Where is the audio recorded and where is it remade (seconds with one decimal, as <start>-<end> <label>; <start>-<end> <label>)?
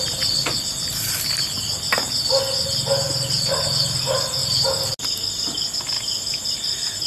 0.0-7.1 recorded